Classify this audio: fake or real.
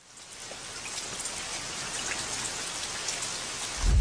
real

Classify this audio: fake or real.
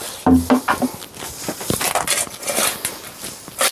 real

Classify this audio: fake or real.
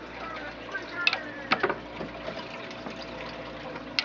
real